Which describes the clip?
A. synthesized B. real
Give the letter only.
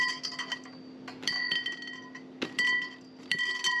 B